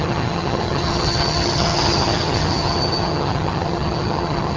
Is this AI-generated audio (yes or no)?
yes